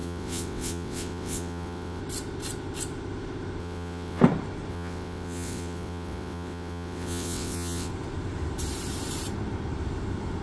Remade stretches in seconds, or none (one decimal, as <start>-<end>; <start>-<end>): 0.0-2.0; 3.6-4.2; 4.7-7.9

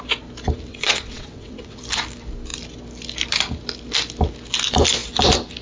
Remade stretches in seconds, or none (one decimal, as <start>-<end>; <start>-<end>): 0.7-1.8

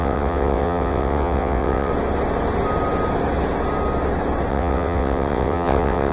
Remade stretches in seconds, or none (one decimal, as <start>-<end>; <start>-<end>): 0.0-1.9; 4.5-6.1

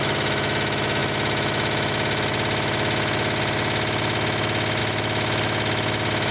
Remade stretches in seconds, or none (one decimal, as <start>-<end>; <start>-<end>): none

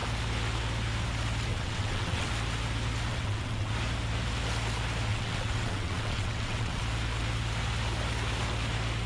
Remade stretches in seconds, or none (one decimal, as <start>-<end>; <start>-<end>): 1.5-2.3; 3.1-3.7; 5.1-6.8